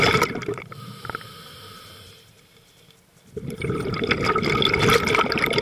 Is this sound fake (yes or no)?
no